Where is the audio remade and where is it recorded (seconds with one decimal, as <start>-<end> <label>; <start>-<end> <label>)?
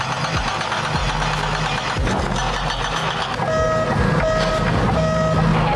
0.0-5.8 recorded